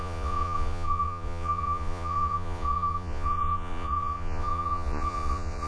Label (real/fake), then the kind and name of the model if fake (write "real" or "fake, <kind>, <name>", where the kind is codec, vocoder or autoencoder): fake, vocoder, Vocos